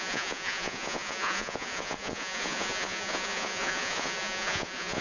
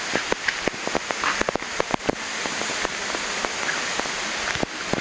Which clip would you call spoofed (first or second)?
first